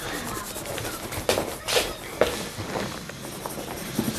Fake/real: real